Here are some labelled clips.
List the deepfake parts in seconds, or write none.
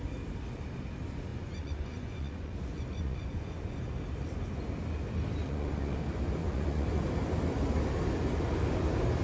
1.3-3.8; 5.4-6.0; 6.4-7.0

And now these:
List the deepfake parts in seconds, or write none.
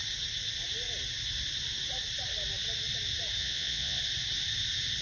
3.4-4.0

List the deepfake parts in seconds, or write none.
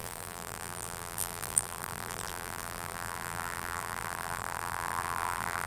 0.0-5.7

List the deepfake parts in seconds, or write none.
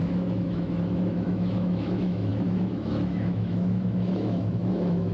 0.0-5.1